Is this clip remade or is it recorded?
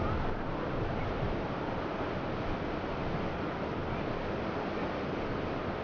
recorded